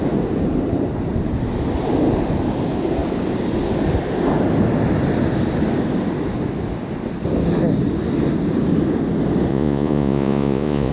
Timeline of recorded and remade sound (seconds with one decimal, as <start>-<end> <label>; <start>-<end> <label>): 0.0-9.5 recorded; 9.5-10.9 remade